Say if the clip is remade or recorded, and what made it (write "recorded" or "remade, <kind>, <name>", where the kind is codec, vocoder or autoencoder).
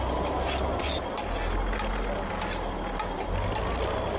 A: recorded